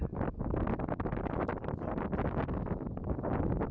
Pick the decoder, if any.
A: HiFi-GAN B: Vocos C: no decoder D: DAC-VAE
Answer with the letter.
C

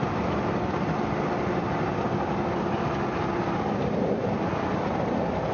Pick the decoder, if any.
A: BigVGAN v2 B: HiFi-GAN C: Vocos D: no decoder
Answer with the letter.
D